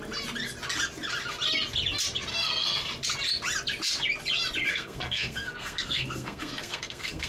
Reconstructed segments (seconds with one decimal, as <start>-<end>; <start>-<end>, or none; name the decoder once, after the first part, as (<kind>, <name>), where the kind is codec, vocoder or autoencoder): 2.3-2.9 (codec, SNAC); 4.7-7.3